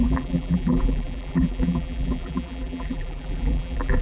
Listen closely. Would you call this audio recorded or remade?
remade